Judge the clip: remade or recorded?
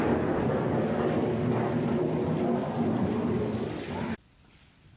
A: recorded